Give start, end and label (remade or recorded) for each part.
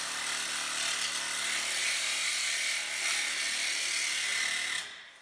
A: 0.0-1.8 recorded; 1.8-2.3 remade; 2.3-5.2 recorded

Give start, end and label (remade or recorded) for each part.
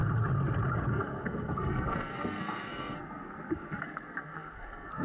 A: 0.0-0.9 recorded; 0.9-5.0 remade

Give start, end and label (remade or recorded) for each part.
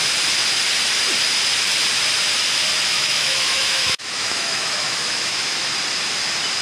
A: 0.0-2.9 recorded; 2.9-5.7 remade; 5.7-6.6 recorded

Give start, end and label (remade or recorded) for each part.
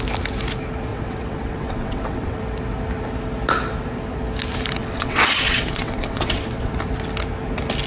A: 0.0-0.9 recorded; 0.9-2.4 remade; 2.4-4.8 recorded; 4.8-6.7 remade; 6.7-7.9 recorded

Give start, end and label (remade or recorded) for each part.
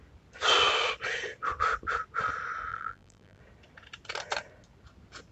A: 0.0-2.7 recorded; 2.7-3.4 remade; 3.4-5.3 recorded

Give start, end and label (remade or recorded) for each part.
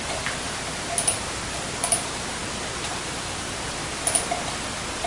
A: 0.0-2.4 remade; 2.4-2.9 recorded; 2.9-5.1 remade